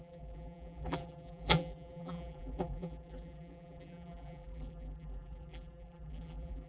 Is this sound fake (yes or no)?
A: yes